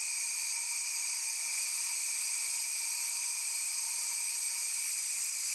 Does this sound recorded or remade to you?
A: recorded